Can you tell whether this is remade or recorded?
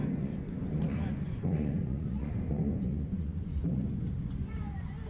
remade